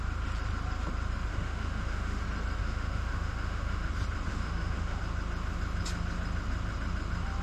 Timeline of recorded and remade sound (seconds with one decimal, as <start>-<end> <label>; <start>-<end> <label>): 0.0-1.3 recorded; 1.3-2.2 remade; 2.2-2.6 recorded; 2.6-3.9 remade; 3.9-4.3 recorded; 4.3-5.0 remade; 5.0-7.4 recorded